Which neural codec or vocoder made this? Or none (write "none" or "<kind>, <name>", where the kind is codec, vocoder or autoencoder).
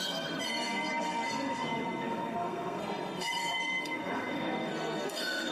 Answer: codec, SNAC